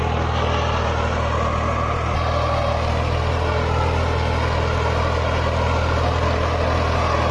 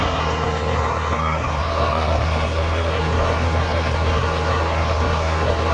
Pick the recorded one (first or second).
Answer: first